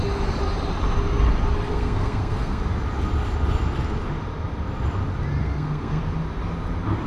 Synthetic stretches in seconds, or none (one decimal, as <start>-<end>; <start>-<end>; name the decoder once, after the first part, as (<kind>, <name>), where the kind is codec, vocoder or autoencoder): 1.7-2.6 (codec, SNAC); 5.4-6.0